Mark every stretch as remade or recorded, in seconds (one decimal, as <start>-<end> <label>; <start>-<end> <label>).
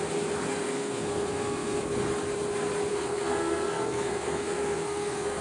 0.0-0.5 recorded; 0.5-1.8 remade; 1.8-2.9 recorded; 2.9-5.4 remade